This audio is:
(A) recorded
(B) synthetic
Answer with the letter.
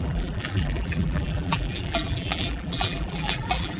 B